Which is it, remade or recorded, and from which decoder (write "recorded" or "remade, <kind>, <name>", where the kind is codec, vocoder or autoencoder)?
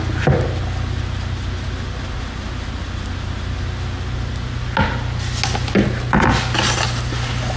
recorded